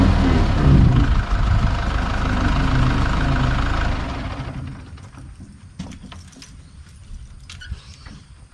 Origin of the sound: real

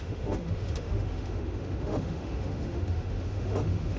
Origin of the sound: fake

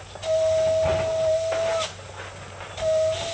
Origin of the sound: real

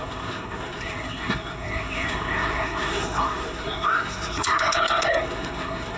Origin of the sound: fake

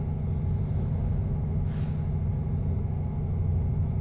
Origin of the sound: real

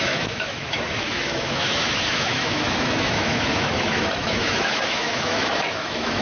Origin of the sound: fake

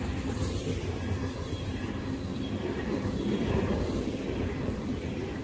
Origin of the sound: real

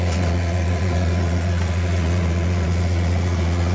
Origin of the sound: fake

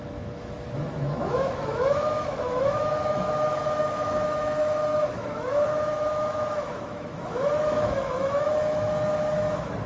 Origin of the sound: fake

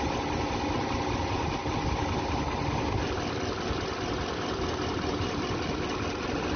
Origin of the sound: real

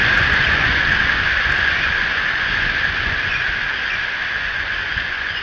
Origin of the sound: fake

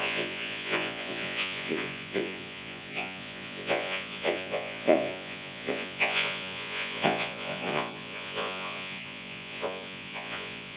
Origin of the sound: fake